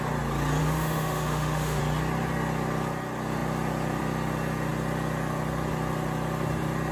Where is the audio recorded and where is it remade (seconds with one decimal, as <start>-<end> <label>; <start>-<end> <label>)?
0.0-0.6 recorded; 0.6-1.8 remade; 1.8-6.9 recorded